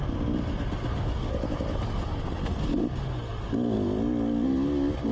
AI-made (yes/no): no